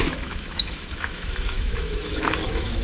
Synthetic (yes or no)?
yes